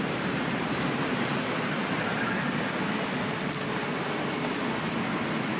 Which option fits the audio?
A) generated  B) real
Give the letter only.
B